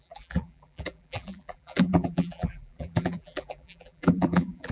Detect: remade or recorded remade